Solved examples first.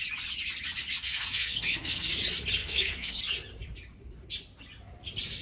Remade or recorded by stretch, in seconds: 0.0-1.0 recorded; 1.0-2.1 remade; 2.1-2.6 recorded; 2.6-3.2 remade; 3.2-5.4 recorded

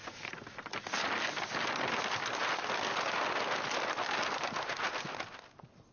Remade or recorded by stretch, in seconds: 0.0-5.9 recorded

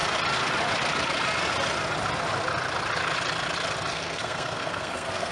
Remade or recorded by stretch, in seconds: 0.0-3.9 recorded; 3.9-5.3 remade

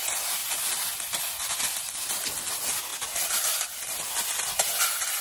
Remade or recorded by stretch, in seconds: 0.0-5.2 recorded